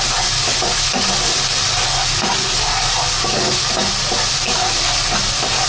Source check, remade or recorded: recorded